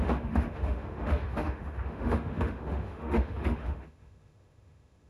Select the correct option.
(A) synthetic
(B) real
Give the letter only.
A